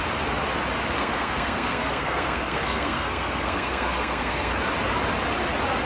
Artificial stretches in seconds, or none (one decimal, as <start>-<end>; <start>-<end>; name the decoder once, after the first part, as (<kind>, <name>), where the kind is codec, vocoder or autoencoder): 1.0-4.5 (codec, SNAC)